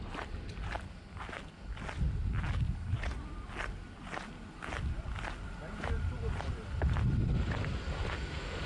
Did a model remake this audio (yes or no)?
no